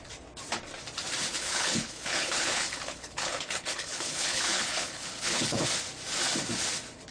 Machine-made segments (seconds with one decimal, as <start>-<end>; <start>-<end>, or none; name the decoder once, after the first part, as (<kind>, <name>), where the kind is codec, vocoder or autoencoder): 1.3-5.6 (codec, HILCodec)